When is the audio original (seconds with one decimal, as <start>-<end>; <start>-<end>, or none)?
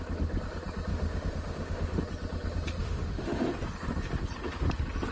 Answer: 0.0-0.9; 2.0-2.8; 3.4-5.1